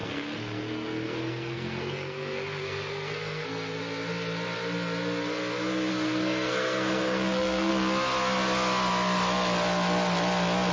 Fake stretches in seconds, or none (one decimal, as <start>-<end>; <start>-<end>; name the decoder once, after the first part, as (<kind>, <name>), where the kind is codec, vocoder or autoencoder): 0.0-3.8 (codec, SNAC); 5.9-7.7